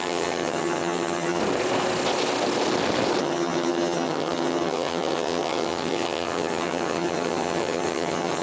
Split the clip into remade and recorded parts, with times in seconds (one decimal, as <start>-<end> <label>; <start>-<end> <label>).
0.0-1.4 remade; 1.4-3.2 recorded; 3.2-8.4 remade